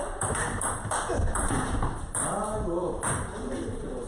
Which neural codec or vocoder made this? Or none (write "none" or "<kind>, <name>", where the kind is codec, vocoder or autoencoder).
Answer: vocoder, BigVGAN v2